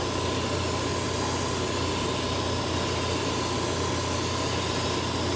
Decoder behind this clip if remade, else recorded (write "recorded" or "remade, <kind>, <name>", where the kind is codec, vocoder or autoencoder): recorded